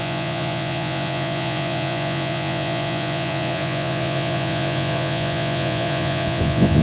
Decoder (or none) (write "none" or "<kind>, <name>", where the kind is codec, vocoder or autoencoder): vocoder, Vocos